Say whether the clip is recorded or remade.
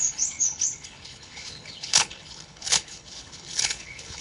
remade